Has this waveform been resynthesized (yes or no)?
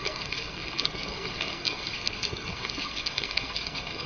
yes